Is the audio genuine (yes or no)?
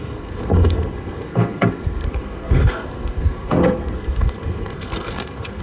no